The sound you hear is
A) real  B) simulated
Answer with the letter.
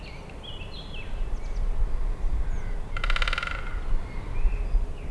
A